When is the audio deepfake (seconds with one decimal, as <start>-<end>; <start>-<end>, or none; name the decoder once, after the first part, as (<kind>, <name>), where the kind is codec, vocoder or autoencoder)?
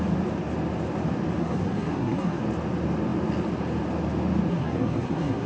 1.4-2.4 (codec, SNAC); 4.5-5.5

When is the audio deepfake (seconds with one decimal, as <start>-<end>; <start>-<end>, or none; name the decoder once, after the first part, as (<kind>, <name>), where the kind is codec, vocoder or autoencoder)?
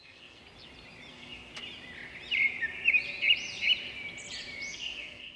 0.0-0.4 (codec, SNAC); 1.1-1.5; 4.7-5.4